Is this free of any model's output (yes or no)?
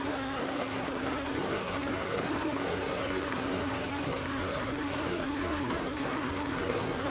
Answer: no